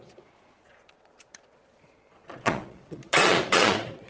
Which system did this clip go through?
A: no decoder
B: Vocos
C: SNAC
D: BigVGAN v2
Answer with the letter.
B